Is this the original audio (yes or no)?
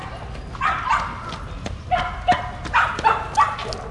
yes